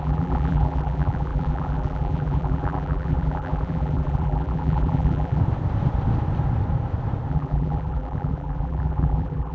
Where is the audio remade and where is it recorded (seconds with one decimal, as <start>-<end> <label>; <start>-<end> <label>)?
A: 0.0-5.4 remade; 5.4-7.3 recorded; 7.3-9.5 remade